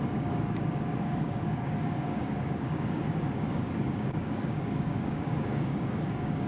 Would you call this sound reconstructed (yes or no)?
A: yes